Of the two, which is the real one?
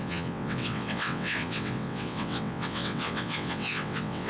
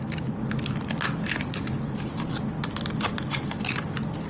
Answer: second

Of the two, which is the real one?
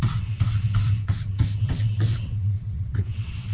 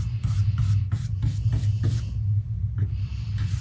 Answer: second